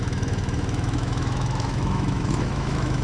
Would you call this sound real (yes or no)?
no